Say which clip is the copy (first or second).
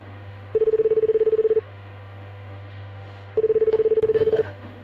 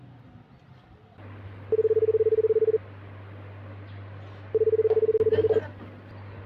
first